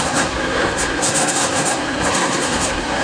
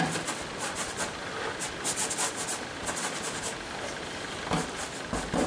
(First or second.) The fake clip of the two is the first